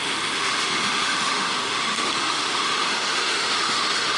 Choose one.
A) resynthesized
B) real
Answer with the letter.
A